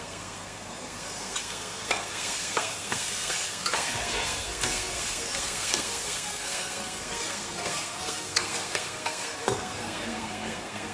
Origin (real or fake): fake